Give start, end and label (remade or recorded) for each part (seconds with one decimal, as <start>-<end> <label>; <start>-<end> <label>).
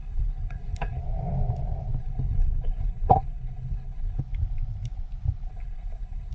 0.0-1.0 remade; 1.0-2.0 recorded; 2.0-4.2 remade; 4.2-5.5 recorded; 5.5-6.3 remade